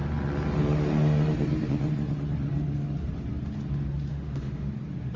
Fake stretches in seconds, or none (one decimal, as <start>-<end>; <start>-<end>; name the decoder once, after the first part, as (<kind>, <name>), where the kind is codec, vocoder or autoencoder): 4.1-4.7 (autoencoder, DAC-VAE)